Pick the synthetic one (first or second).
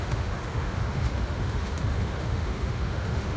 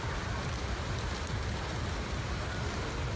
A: first